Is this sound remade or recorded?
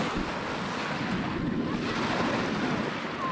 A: recorded